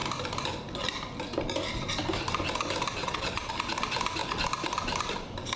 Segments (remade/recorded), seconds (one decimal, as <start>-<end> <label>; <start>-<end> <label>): 0.0-3.0 recorded; 3.0-3.5 remade; 3.5-5.6 recorded